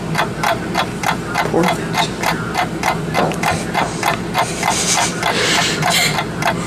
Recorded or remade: recorded